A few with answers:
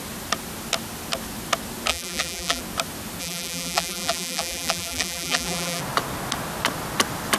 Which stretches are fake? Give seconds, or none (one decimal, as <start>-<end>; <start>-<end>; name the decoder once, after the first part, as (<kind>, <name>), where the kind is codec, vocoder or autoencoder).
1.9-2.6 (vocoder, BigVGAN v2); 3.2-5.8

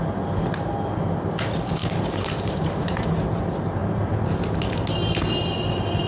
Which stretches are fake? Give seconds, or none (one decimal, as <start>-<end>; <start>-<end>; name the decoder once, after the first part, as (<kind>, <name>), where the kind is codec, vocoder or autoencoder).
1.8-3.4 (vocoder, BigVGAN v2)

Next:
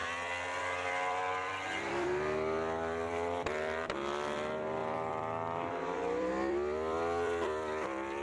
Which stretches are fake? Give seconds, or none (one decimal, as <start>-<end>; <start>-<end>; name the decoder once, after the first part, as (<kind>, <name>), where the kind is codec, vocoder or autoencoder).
0.6-8.2 (vocoder, BigVGAN v2)

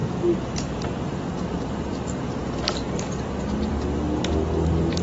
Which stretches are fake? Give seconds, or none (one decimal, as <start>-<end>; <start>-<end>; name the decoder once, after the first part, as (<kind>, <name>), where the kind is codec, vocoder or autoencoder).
none

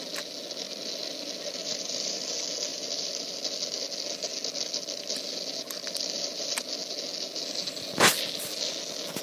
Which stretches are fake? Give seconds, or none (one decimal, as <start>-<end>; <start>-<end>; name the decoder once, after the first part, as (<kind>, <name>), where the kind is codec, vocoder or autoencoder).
1.6-2.3 (vocoder, BigVGAN v2); 2.7-3.3